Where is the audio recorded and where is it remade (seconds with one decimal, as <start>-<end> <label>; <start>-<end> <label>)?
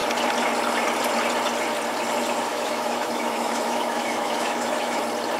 0.0-2.5 recorded; 2.5-5.0 remade; 5.0-5.4 recorded